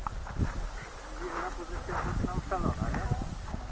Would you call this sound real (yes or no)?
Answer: yes